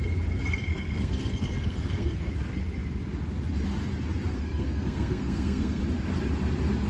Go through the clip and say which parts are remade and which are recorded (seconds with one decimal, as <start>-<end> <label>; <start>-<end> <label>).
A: 0.0-0.7 recorded; 0.7-2.3 remade; 2.3-4.3 recorded; 4.3-5.8 remade; 5.8-6.9 recorded